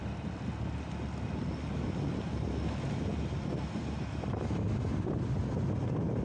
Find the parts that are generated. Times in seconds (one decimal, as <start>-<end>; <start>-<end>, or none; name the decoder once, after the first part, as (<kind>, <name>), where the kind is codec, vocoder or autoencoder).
none